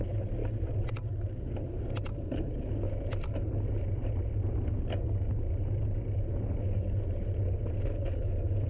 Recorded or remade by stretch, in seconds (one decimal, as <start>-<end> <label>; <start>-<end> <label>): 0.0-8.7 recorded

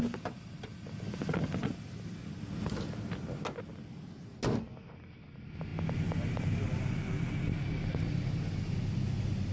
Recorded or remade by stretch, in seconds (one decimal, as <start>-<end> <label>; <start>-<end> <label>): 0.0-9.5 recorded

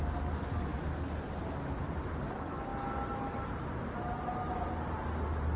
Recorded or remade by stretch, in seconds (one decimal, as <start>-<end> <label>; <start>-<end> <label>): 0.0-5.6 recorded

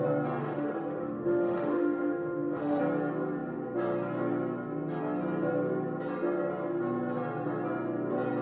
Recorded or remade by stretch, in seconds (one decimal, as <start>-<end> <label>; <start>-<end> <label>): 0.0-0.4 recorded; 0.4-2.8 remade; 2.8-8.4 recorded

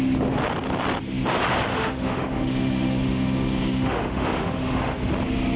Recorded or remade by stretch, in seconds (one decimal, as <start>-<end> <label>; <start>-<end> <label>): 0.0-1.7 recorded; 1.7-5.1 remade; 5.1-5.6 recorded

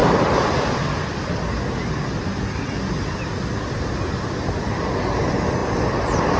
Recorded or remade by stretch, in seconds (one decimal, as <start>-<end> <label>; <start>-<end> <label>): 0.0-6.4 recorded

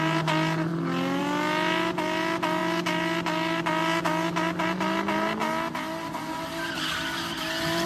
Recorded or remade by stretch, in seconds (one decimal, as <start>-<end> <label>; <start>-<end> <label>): 0.0-7.9 recorded